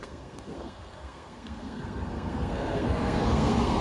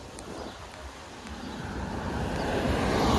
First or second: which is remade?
first